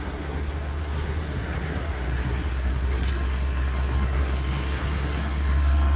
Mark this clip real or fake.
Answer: fake